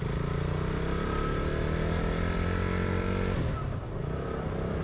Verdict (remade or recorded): recorded